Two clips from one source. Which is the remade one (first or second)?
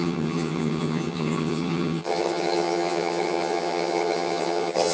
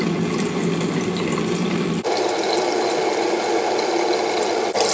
first